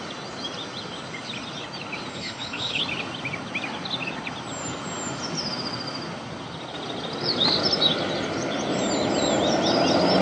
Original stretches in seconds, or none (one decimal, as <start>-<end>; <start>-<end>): 0.0-2.1; 2.8-10.2